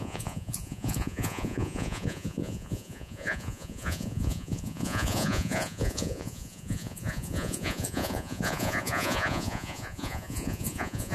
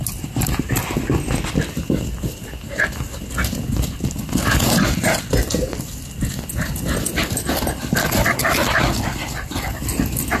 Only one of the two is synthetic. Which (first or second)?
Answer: first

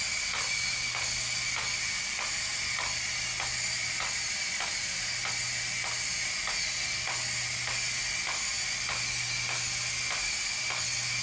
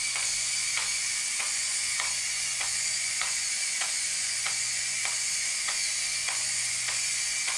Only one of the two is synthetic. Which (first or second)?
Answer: second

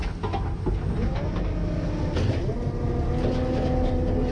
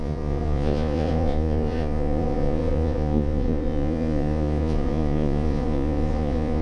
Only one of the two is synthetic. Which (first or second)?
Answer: second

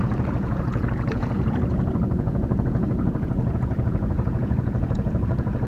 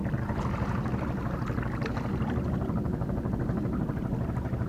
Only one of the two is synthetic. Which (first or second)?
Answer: first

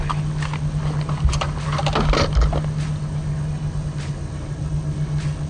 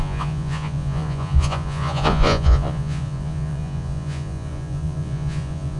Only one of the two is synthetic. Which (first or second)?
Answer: second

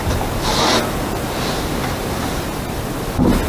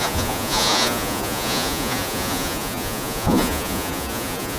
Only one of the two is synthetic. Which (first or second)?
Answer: second